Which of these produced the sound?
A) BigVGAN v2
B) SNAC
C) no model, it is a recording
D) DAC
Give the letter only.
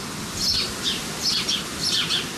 C